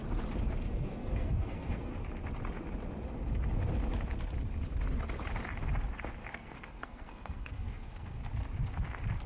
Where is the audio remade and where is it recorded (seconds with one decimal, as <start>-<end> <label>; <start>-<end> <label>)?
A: 0.0-0.6 recorded; 0.6-1.9 remade; 1.9-6.3 recorded; 6.3-8.2 remade; 8.2-9.3 recorded